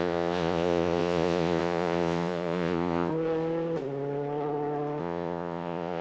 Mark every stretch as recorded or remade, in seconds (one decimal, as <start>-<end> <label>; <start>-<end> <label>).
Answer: 0.0-3.1 remade; 3.1-5.0 recorded; 5.0-6.0 remade